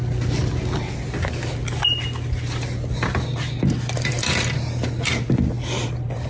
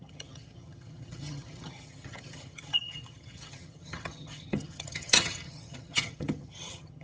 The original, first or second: first